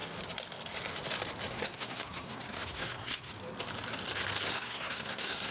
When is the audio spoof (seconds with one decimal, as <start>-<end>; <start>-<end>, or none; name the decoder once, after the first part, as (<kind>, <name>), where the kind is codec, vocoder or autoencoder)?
1.5-3.3 (codec, SNAC); 4.5-5.5